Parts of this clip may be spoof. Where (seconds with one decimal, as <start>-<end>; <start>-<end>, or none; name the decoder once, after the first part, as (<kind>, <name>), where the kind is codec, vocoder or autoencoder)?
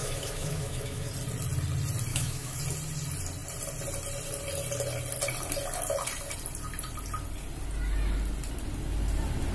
0.0-1.1 (autoencoder, DAC-VAE); 2.1-2.6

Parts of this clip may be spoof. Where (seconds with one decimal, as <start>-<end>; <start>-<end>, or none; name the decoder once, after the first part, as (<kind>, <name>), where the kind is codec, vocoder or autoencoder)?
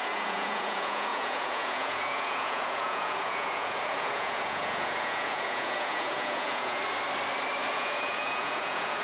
0.0-6.8 (vocoder, Vocos); 7.7-9.0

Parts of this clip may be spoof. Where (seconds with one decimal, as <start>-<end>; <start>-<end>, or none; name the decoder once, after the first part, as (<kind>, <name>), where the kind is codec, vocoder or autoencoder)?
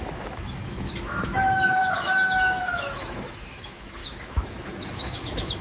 0.0-5.6 (autoencoder, DAC-VAE)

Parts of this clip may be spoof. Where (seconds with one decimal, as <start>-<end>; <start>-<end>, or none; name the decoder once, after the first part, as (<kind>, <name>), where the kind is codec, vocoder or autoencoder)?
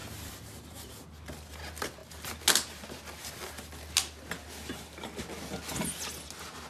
0.0-0.9 (vocoder, BigVGAN v2)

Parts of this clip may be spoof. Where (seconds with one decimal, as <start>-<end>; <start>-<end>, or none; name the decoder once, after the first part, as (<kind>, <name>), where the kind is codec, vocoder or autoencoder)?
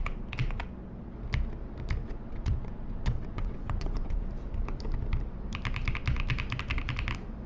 2.0-4.3 (vocoder, WaveNeXt)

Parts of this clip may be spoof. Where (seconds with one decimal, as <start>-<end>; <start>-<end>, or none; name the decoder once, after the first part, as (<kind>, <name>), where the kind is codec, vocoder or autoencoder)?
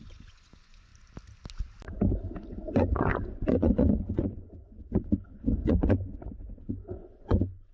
0.0-0.9 (vocoder, Vocos); 2.5-7.7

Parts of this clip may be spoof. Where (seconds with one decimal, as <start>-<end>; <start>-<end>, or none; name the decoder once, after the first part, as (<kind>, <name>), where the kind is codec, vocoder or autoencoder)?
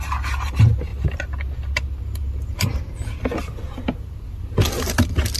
none